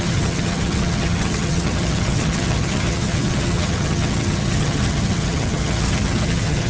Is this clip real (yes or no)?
no